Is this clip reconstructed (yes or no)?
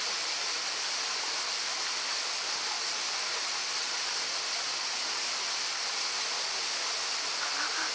no